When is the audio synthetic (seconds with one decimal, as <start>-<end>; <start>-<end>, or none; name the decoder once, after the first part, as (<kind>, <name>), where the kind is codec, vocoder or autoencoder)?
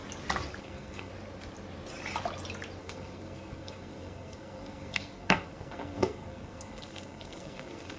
0.6-1.1 (codec, SNAC); 2.8-8.0